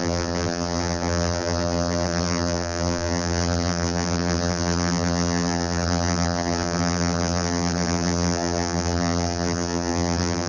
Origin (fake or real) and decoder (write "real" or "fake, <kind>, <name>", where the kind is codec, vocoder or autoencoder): fake, vocoder, BigVGAN v2